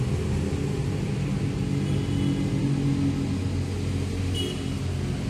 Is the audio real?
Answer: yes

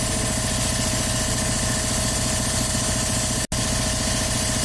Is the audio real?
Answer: yes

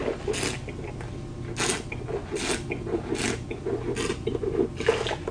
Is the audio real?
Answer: yes